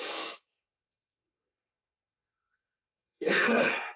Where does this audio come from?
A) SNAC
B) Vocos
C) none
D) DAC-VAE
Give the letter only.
A